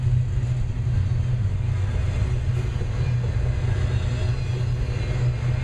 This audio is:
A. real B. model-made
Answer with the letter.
A